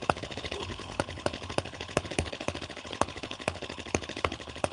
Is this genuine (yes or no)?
no